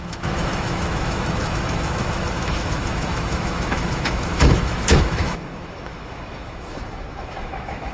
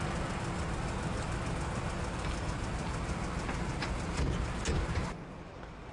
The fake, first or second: first